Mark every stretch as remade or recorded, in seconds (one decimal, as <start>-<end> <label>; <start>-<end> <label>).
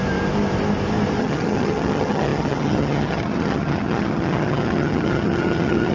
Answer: 0.0-1.2 recorded; 1.2-5.9 remade